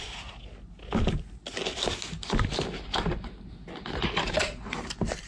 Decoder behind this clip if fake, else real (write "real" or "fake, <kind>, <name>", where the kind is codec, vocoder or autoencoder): real